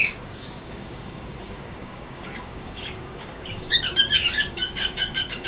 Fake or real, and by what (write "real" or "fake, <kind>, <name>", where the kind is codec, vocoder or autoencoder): fake, codec, DAC